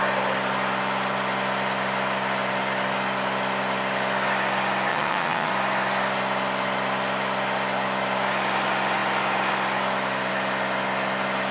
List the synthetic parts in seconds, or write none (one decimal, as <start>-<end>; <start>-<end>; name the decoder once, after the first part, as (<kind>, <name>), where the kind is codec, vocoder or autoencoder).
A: 4.9-5.5 (vocoder, Vocos)